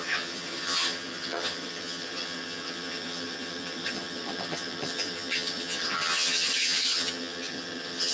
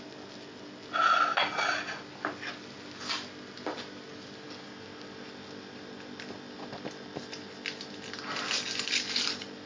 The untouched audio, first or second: second